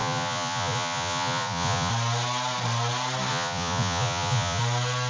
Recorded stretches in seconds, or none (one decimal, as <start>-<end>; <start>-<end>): 1.9-3.3; 4.6-5.1